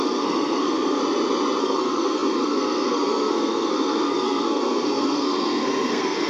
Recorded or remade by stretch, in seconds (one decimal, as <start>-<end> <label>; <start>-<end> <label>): 0.0-1.0 remade; 1.0-1.6 recorded; 1.6-6.3 remade